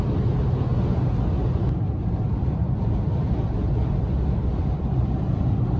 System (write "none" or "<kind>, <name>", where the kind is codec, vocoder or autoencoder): none